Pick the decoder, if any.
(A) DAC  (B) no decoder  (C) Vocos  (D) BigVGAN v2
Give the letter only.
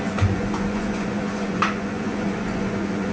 C